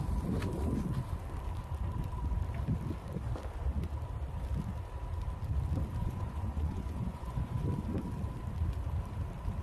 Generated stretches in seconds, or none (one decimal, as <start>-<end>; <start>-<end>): 6.0-7.6